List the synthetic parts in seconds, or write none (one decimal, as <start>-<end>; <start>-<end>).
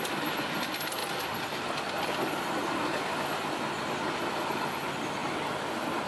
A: none